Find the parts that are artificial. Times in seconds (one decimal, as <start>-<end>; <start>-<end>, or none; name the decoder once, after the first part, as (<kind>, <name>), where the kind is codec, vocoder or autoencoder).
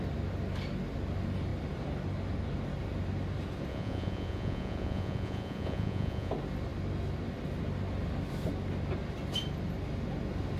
3.7-6.3 (vocoder, Vocos)